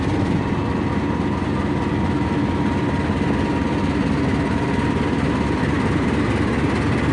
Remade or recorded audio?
recorded